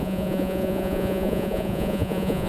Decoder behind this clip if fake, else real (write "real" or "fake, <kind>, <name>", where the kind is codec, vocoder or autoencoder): fake, vocoder, Vocos